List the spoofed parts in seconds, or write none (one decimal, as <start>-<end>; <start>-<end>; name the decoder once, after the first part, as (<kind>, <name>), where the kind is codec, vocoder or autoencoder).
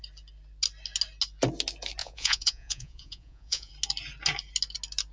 2.0-3.7 (vocoder, Vocos)